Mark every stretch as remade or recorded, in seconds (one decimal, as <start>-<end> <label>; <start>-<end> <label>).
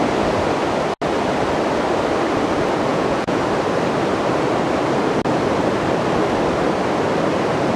0.0-2.9 recorded; 2.9-3.4 remade; 3.4-7.8 recorded